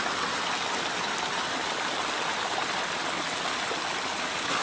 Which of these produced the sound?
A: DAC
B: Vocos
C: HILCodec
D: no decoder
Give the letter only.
D